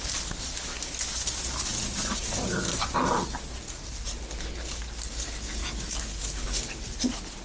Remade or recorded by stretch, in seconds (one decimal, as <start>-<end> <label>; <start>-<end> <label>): 0.0-5.6 recorded; 5.6-6.6 remade; 6.6-7.4 recorded